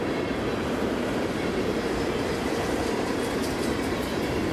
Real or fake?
fake